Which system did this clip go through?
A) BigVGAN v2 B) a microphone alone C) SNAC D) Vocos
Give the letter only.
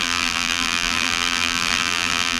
A